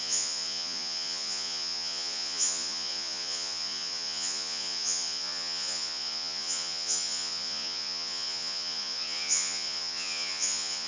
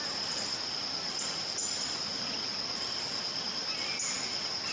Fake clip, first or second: first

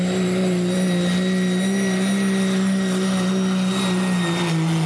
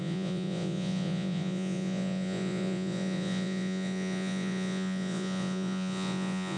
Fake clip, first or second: second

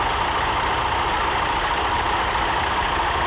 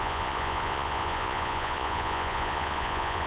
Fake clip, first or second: second